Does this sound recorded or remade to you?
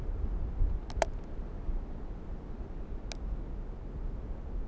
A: recorded